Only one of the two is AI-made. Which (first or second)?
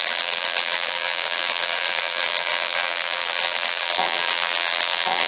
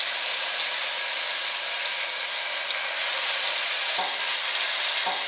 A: first